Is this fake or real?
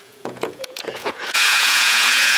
fake